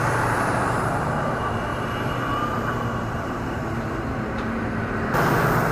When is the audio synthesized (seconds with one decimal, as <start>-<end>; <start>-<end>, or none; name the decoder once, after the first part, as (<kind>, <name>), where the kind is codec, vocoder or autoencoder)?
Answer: 0.0-1.7 (vocoder, BigVGAN v2); 2.5-5.7